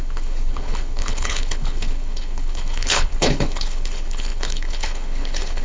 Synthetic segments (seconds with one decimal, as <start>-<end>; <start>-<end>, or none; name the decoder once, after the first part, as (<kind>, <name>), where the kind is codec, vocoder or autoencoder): 0.0-5.6 (codec, HILCodec)